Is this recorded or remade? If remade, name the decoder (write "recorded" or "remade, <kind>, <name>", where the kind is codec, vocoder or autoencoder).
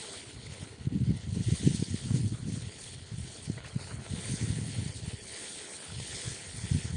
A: remade, codec, HILCodec